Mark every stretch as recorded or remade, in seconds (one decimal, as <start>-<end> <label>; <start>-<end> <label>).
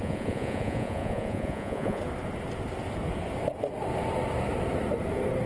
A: 0.0-2.0 remade; 2.0-5.5 recorded